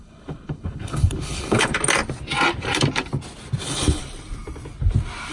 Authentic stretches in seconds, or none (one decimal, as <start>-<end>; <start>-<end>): 1.7-3.6; 4.0-5.3